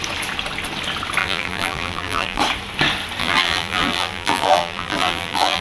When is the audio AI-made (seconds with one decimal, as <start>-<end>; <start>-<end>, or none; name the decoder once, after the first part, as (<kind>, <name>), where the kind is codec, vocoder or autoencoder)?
1.2-2.4 (vocoder, BigVGAN v2); 3.2-5.6